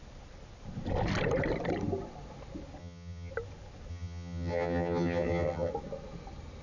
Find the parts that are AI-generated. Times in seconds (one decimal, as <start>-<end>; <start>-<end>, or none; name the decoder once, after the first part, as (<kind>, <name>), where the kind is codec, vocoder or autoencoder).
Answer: 2.8-3.3 (vocoder, HiFi-GAN); 3.9-5.7